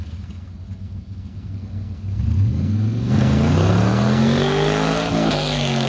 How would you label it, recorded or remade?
remade